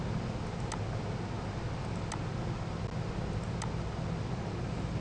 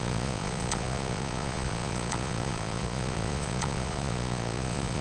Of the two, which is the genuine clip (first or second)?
first